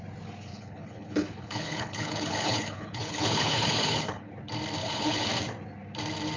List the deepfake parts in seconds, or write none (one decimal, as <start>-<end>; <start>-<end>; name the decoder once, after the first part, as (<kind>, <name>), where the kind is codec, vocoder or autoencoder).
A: 0.5-4.3 (codec, HILCodec); 4.8-5.3